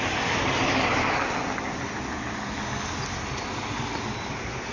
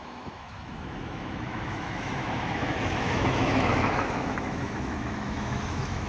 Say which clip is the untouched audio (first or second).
first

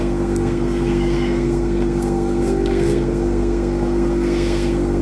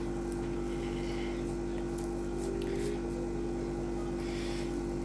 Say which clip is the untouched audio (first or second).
second